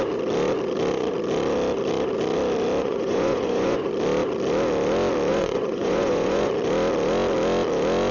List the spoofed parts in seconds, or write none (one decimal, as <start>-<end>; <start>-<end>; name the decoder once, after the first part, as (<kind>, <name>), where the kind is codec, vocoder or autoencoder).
2.8-3.9 (vocoder, Vocos); 5.3-6.5